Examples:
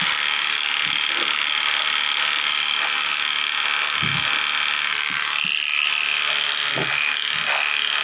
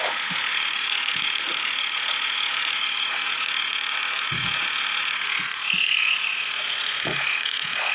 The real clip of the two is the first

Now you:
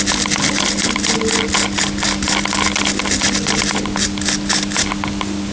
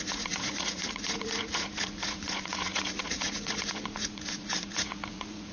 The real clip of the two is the first